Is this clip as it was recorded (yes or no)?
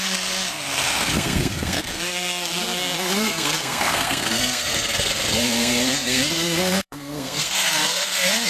no